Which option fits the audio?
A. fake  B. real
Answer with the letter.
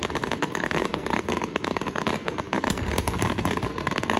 A